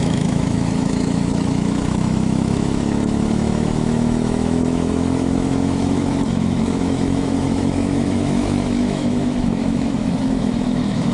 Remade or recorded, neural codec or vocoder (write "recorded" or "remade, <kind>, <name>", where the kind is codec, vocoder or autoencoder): remade, autoencoder, DAC-VAE